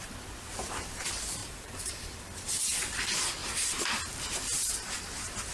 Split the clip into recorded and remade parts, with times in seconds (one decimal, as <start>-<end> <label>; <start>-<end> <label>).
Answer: 0.0-1.4 recorded; 1.4-2.2 remade; 2.2-3.4 recorded; 3.4-4.1 remade; 4.1-5.5 recorded